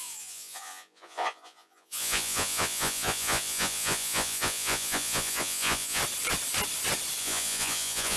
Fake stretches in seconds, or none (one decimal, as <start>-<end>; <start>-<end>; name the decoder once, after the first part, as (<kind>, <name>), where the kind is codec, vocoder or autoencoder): 0.0-6.0 (vocoder, Vocos); 7.2-8.2